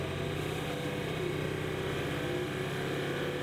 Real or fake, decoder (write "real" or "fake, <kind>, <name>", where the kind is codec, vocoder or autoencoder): real